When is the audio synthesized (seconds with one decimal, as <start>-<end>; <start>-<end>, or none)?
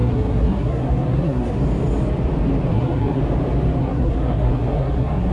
0.0-1.6; 2.7-3.2; 3.8-5.3